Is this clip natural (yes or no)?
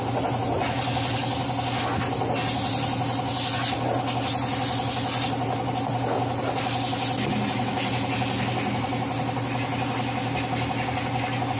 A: yes